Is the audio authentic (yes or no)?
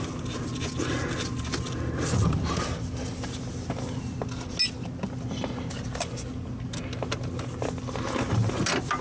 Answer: yes